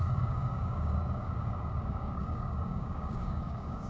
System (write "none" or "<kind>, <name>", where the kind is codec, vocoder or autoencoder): codec, DAC